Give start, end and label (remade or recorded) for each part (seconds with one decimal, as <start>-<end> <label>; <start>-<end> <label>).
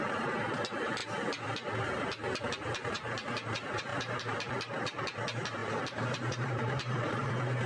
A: 0.0-3.9 recorded; 3.9-4.6 remade; 4.6-5.6 recorded; 5.6-7.3 remade; 7.3-7.7 recorded